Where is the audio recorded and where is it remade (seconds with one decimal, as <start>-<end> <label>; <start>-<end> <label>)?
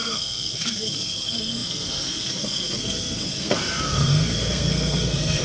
0.0-5.4 remade